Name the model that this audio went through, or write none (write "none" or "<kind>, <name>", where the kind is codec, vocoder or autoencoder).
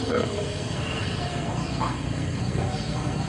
codec, SNAC